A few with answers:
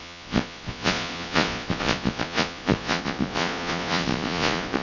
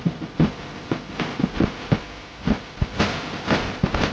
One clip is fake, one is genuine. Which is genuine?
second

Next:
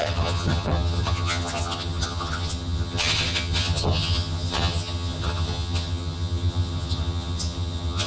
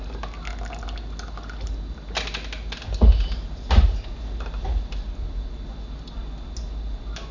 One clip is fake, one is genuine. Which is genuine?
second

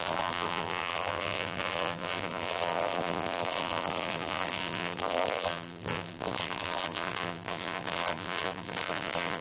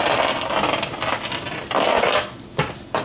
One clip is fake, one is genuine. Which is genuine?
second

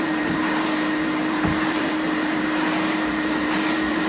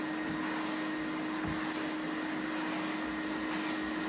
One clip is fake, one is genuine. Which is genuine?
second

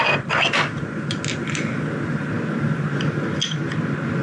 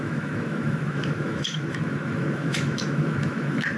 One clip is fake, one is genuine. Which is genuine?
first